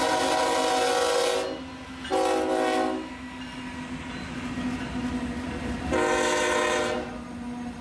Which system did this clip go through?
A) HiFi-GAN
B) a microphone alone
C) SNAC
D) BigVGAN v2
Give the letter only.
B